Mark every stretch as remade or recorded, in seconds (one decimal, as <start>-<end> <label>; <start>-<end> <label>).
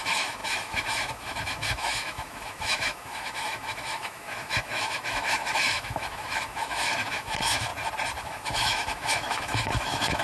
0.0-7.7 remade; 7.7-8.2 recorded; 8.2-10.2 remade